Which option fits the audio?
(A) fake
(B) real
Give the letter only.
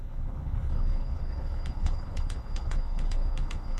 A